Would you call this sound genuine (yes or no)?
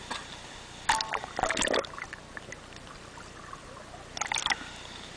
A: yes